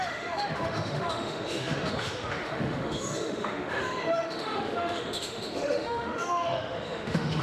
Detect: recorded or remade remade